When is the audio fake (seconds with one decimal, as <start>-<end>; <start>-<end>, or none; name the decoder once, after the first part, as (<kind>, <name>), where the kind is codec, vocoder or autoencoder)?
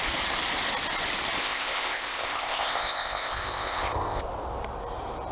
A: 1.4-4.2 (codec, ZipCodec)